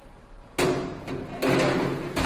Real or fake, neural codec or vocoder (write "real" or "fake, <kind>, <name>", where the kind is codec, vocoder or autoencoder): fake, vocoder, BigVGAN v2